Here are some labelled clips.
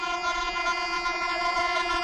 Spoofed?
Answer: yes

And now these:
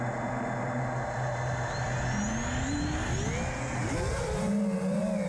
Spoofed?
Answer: no